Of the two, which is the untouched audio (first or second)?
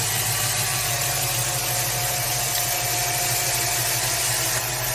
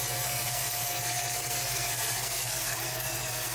first